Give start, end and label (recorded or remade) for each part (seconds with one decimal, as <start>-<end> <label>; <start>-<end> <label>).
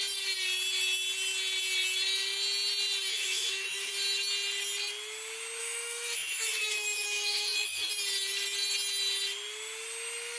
0.0-3.1 recorded; 3.1-3.9 remade; 3.9-5.6 recorded; 5.6-7.9 remade; 7.9-10.4 recorded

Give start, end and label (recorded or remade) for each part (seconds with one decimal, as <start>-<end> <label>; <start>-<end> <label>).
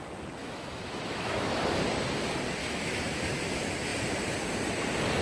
0.0-0.4 recorded; 0.4-1.6 remade; 1.6-2.6 recorded; 2.6-3.4 remade; 3.4-5.2 recorded